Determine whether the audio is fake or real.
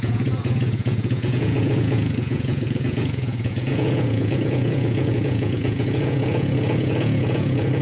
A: fake